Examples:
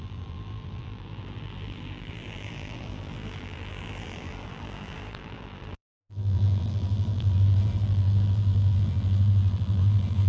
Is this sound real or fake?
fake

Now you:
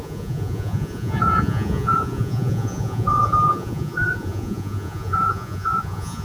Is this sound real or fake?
fake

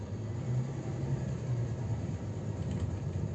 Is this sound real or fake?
fake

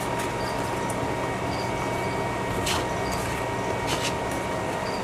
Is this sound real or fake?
real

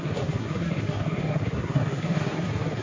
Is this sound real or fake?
fake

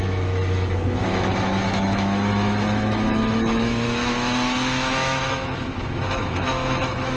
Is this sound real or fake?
fake